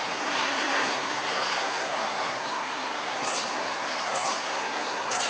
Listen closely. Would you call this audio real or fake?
fake